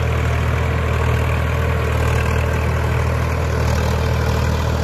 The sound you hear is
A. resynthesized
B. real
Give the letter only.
B